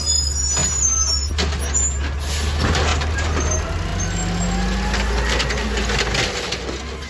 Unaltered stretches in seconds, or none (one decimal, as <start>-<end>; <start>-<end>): 0.0-0.6; 1.3-2.9; 3.5-7.1